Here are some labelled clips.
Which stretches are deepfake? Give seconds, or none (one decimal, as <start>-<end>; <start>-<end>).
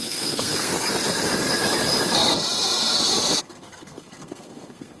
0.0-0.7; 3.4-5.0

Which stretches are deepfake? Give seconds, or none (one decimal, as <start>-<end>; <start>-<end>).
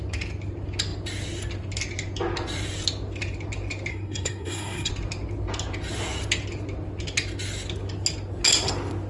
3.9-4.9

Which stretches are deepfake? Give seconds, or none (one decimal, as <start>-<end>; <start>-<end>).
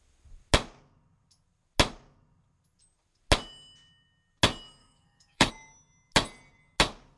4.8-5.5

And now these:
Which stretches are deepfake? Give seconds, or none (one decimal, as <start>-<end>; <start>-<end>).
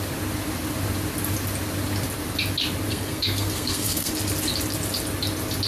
2.9-4.1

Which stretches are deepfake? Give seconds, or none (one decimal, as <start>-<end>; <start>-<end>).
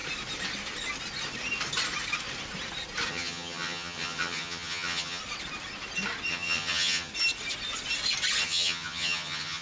3.1-5.2; 6.3-7.1; 8.4-9.6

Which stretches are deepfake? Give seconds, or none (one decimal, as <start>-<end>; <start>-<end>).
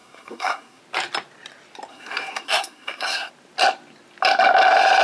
0.0-0.8; 1.9-3.3